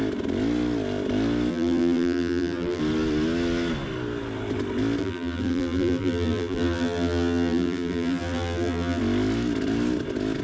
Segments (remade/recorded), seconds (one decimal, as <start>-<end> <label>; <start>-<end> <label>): 0.0-1.5 recorded; 1.5-2.8 remade; 2.8-5.0 recorded; 5.0-9.0 remade; 9.0-10.4 recorded